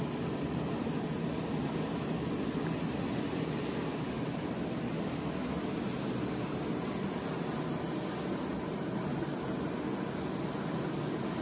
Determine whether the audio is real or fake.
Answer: real